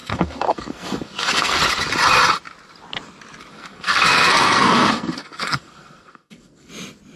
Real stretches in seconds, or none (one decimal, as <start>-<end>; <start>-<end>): 1.6-3.5; 6.7-7.2

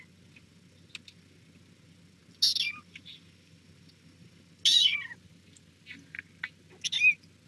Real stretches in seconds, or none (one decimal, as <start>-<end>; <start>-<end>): 0.0-4.7; 6.1-7.5

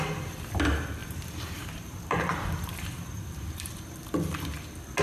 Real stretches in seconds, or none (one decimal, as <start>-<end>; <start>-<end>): 0.0-1.0; 3.7-5.0

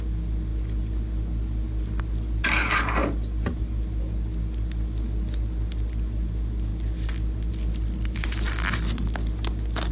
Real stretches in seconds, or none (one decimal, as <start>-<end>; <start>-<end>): 0.0-9.9

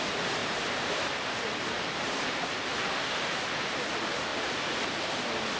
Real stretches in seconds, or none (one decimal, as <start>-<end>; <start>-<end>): 0.0-0.4; 3.8-5.6